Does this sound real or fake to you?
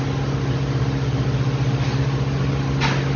real